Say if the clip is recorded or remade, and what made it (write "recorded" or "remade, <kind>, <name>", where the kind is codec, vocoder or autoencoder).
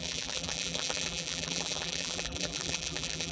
remade, vocoder, BigVGAN v2